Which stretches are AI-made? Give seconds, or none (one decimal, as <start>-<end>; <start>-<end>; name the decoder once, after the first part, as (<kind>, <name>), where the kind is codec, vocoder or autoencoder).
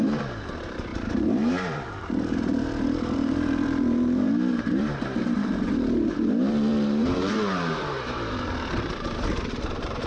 0.0-10.1 (vocoder, BigVGAN v2)